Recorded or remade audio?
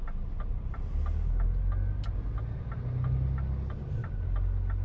recorded